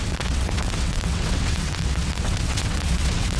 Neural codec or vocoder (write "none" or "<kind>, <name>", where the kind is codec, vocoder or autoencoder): vocoder, WaveNeXt